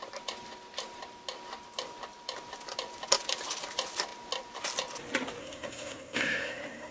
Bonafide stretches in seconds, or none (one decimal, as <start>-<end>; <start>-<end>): 0.0-5.4